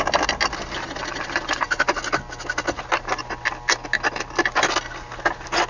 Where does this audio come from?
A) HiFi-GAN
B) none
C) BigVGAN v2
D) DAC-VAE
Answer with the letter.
B